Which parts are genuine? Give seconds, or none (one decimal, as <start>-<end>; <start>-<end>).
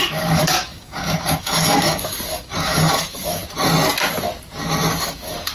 3.4-4.9